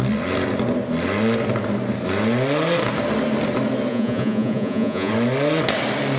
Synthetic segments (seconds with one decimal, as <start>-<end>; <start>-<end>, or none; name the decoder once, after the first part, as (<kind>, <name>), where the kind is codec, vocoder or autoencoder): 3.9-5.1 (vocoder, Vocos)